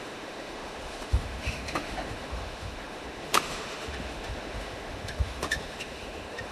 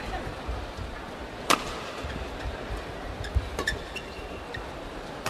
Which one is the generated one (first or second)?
first